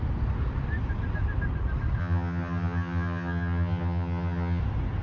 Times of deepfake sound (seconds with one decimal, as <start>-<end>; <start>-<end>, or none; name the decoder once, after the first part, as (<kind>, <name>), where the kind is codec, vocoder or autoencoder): 2.0-4.6 (vocoder, HiFi-GAN)